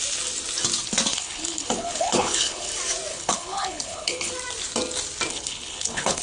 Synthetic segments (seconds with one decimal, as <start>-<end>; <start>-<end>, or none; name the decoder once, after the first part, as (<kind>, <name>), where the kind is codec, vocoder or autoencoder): 1.1-2.7 (codec, HILCodec); 3.1-4.3; 5.3-6.2

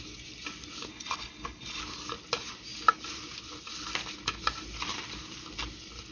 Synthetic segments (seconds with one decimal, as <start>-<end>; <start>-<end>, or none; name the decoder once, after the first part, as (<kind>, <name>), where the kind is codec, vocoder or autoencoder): 0.9-1.8 (codec, HILCodec)

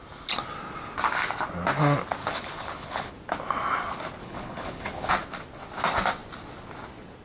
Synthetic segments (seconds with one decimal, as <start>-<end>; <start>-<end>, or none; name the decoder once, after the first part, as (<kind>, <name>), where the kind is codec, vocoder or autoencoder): 2.2-3.1 (codec, HILCodec); 4.2-5.1

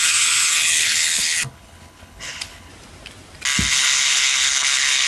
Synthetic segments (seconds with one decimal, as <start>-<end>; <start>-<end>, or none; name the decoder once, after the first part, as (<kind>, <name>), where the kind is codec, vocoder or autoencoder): 0.0-2.7 (codec, HILCodec); 3.7-5.1